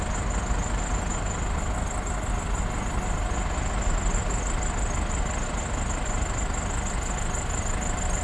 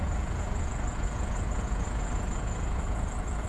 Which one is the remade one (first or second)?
second